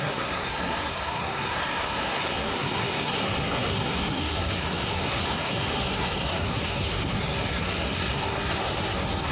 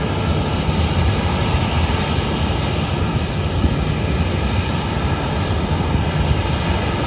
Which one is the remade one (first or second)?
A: first